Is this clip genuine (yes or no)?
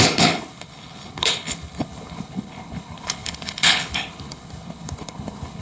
no